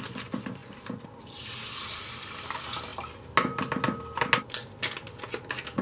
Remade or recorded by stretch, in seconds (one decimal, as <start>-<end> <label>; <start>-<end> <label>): 0.0-0.6 recorded; 0.6-2.0 remade; 2.0-5.8 recorded